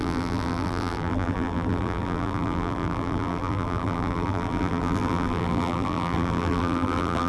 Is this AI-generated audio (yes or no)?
yes